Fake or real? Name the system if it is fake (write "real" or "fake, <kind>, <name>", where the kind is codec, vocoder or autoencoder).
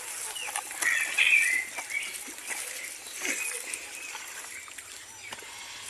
real